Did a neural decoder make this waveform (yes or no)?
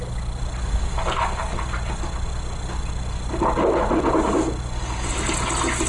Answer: no